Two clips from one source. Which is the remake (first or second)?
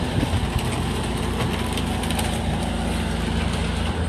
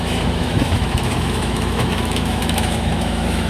second